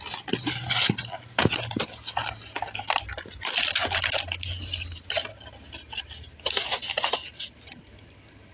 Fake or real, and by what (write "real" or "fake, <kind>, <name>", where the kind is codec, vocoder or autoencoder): real